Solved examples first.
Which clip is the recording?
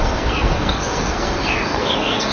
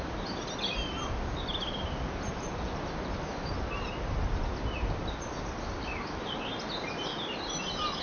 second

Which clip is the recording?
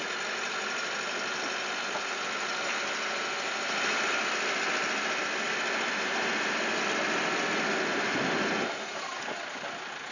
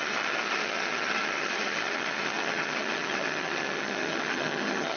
first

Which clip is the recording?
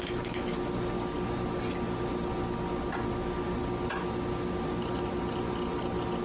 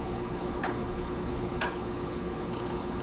first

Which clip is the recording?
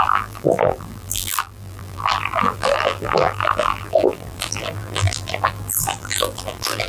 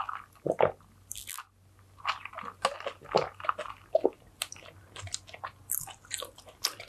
second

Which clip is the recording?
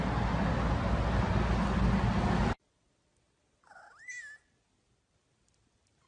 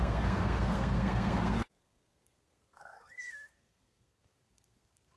first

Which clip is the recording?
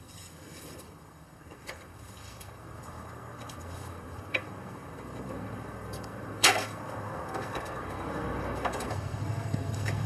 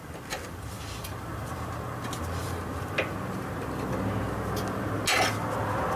second